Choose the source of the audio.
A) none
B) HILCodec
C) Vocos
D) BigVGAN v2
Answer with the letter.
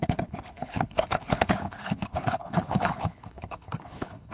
B